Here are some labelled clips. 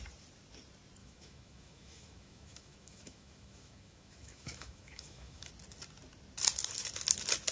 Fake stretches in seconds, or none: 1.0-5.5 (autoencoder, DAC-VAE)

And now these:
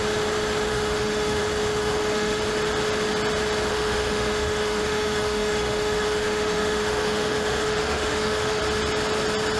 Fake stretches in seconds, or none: 0.7-1.4 (autoencoder, DAC-VAE); 1.8-2.4; 3.7-8.6

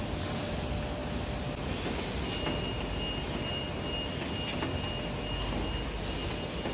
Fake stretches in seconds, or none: none

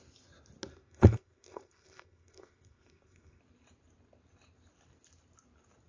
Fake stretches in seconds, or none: 0.7-3.4 (codec, SNAC)

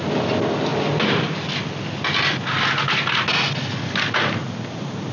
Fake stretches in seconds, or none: none